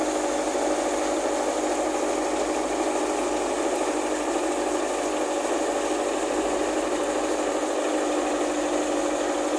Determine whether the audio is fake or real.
real